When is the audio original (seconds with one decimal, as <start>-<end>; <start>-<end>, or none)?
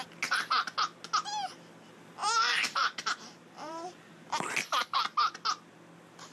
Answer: 0.0-2.2; 4.4-6.3